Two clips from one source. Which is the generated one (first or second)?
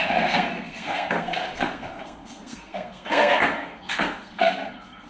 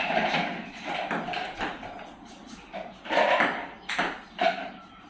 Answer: first